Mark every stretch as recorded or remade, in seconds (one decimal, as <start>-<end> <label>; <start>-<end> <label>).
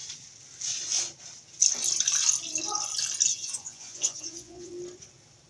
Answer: 0.0-3.3 recorded; 3.3-4.7 remade; 4.7-5.5 recorded